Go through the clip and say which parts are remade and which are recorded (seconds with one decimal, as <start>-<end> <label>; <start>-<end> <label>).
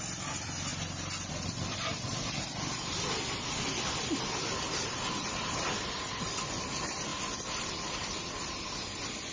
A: 0.0-0.7 remade; 0.7-1.3 recorded; 1.3-2.1 remade; 2.1-4.8 recorded; 4.8-7.1 remade; 7.1-7.7 recorded; 7.7-9.3 remade